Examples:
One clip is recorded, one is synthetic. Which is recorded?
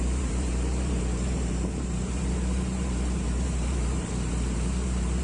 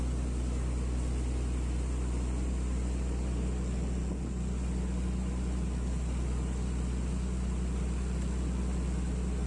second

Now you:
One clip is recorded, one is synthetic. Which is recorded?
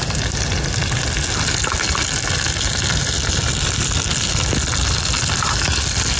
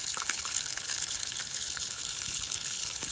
first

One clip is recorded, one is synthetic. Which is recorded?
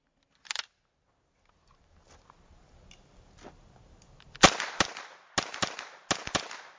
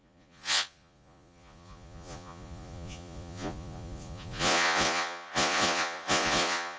first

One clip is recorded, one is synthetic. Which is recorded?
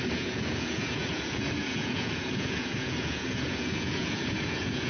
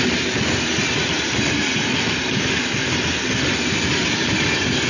second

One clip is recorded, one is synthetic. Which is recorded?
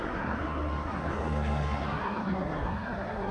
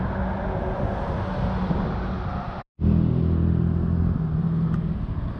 second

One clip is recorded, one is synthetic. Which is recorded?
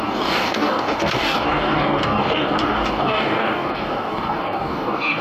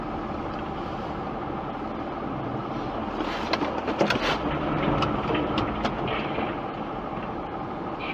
second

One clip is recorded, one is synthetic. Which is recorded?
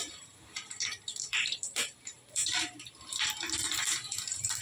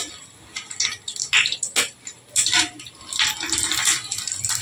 second